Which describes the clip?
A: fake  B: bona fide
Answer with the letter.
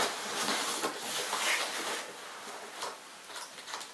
B